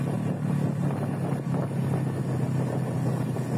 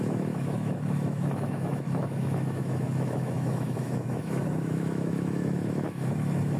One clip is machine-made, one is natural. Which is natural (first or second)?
first